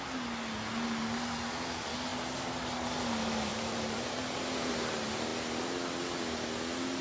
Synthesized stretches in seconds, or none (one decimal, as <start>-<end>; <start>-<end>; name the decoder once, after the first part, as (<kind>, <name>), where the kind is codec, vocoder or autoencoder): 3.5-4.7 (vocoder, BigVGAN v2)